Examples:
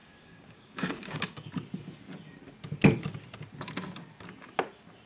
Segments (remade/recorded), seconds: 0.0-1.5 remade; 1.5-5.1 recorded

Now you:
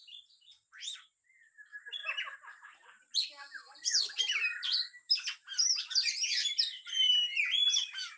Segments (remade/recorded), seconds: 0.0-8.2 recorded

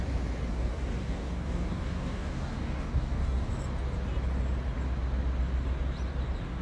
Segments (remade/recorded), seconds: 0.0-0.5 recorded; 0.5-3.5 remade; 3.5-6.6 recorded

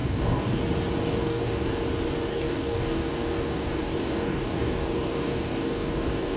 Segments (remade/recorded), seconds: 0.0-0.6 remade; 0.6-1.0 recorded; 1.0-1.8 remade; 1.8-2.3 recorded; 2.3-6.4 remade